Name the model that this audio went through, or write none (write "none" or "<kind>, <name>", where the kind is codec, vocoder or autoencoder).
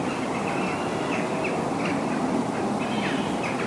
none